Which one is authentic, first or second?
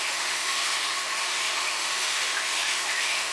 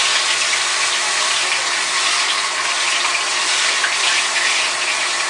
second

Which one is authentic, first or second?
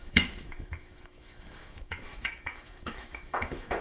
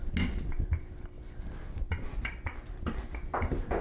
second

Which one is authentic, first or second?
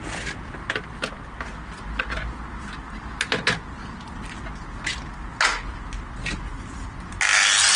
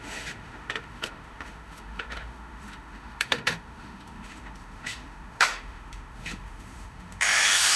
first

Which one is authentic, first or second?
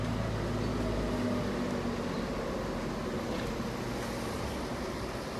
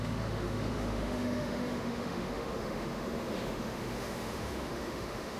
first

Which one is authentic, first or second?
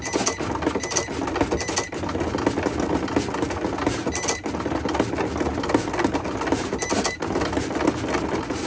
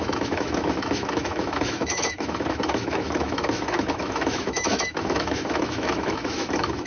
first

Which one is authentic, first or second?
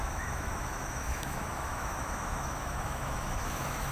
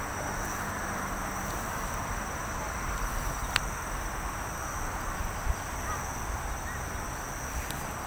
second